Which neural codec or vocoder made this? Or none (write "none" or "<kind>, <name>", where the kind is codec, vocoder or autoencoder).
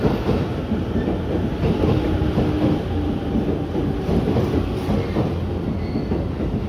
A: none